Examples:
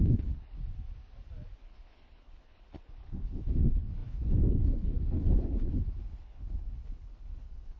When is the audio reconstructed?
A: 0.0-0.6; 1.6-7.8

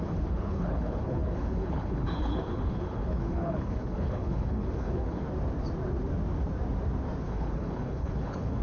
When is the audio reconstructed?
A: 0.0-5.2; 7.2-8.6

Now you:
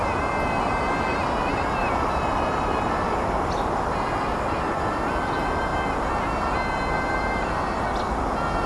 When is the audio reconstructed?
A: none

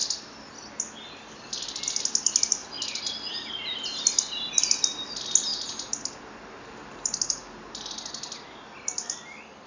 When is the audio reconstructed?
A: none

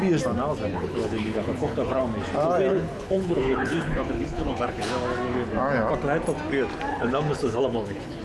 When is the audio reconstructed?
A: 0.7-2.0; 2.7-4.9; 6.9-8.2

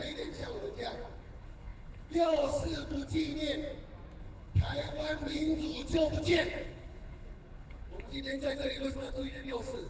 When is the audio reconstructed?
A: 0.0-3.3; 4.2-9.9

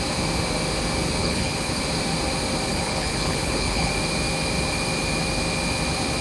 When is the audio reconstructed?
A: 1.2-1.8; 2.7-3.9

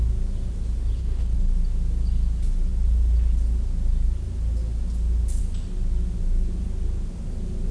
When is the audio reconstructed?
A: 1.0-1.5